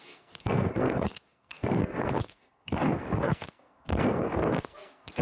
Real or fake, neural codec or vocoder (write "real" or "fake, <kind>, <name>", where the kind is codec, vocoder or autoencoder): fake, codec, SNAC